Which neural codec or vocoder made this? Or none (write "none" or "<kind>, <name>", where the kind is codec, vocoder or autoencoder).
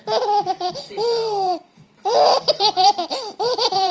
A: vocoder, BigVGAN v2